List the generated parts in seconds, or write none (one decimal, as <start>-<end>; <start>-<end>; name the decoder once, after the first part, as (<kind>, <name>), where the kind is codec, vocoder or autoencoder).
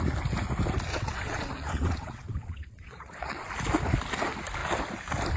0.9-3.5 (vocoder, WaveNeXt)